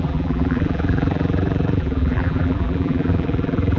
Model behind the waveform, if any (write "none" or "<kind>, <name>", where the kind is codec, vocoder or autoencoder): vocoder, BigVGAN v2